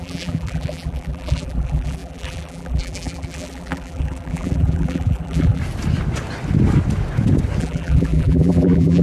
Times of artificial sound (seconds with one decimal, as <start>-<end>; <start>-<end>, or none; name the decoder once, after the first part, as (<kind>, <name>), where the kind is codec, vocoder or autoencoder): 0.0-5.6 (vocoder, BigVGAN v2); 7.6-9.0